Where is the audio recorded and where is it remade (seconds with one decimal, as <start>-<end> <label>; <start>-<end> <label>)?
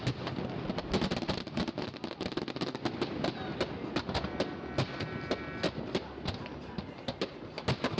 0.0-8.0 recorded